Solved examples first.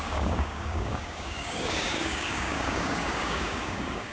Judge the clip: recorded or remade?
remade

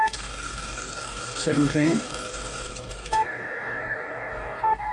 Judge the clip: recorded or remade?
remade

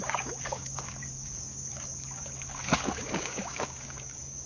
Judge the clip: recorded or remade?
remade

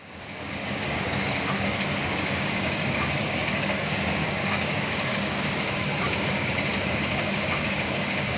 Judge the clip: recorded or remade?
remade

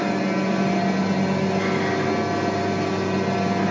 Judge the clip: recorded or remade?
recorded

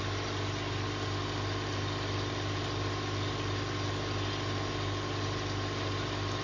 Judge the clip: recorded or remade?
recorded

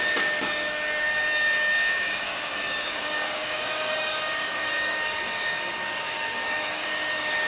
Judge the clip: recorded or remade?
remade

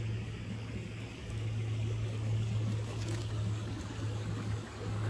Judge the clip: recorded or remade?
remade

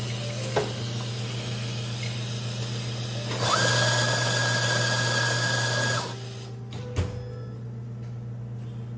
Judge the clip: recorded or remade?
recorded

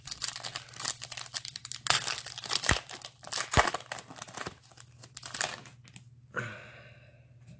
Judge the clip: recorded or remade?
recorded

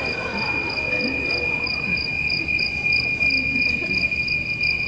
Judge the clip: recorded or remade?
recorded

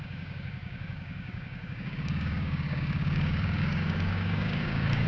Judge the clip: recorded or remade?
remade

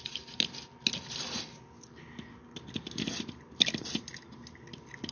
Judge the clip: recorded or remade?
recorded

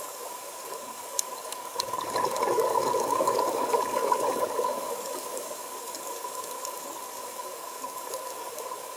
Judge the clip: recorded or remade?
remade